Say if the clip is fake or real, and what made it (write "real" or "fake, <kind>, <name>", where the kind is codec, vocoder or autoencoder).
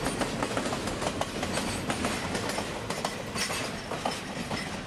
real